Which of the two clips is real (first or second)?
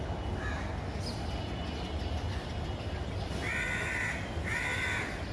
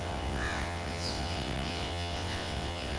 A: first